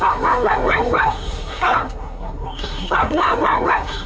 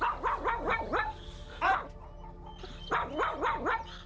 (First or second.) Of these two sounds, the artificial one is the first